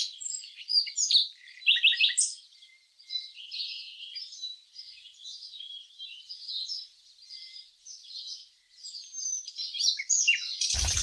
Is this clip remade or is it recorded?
remade